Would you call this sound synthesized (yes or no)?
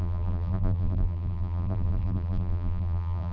yes